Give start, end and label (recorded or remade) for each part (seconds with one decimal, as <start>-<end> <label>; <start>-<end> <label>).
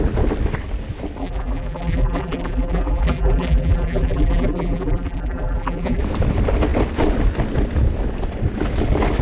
0.0-1.2 recorded; 1.2-6.0 remade; 6.0-9.2 recorded